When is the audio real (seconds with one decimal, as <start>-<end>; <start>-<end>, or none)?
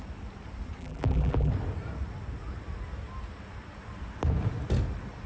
0.0-0.8; 1.5-5.3